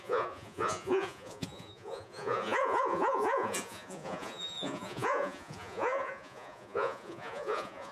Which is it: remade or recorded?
remade